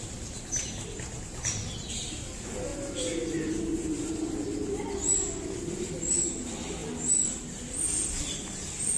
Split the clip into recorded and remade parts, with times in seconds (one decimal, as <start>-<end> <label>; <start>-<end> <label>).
0.0-9.0 recorded